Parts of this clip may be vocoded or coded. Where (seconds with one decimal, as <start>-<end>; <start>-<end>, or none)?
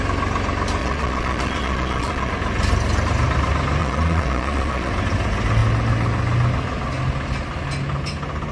0.8-2.3; 3.8-4.9